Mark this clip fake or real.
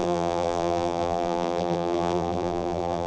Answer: fake